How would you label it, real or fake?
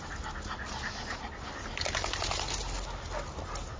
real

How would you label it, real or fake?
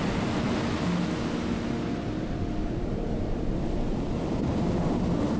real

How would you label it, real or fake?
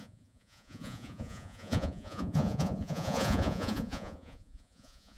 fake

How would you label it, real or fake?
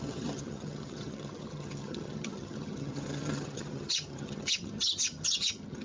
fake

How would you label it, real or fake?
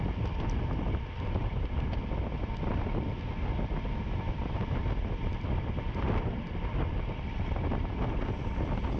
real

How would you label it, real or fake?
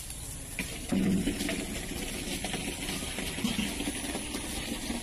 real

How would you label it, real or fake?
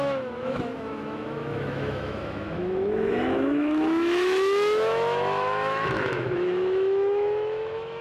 fake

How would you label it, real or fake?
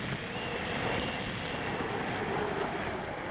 real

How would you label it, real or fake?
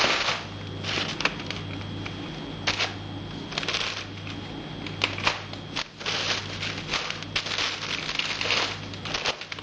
real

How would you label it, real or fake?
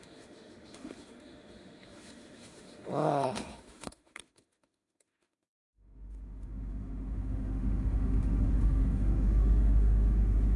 fake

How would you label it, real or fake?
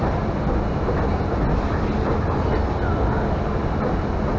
real